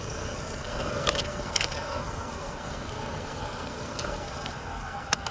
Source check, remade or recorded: remade